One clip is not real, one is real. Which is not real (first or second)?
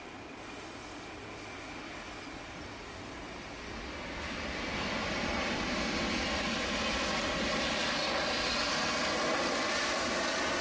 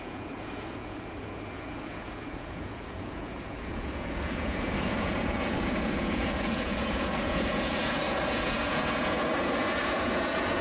second